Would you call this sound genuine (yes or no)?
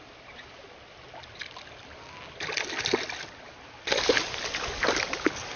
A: yes